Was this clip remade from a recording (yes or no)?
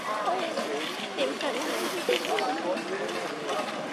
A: no